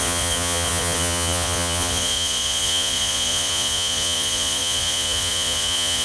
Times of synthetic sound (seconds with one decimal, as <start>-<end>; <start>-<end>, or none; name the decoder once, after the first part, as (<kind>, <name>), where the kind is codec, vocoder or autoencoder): 0.0-6.0 (vocoder, Vocos)